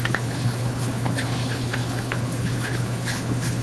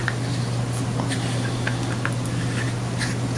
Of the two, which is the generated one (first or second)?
first